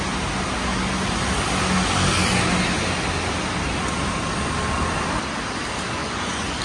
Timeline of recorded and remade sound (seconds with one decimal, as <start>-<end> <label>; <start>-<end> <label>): 0.0-6.0 recorded; 6.0-6.6 remade